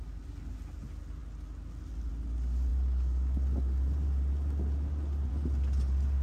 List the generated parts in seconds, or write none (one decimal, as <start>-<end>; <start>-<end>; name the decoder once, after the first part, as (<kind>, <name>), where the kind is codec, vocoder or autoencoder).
none